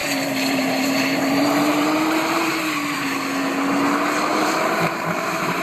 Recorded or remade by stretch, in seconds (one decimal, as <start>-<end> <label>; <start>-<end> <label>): 0.0-3.1 remade; 3.1-4.3 recorded; 4.3-5.6 remade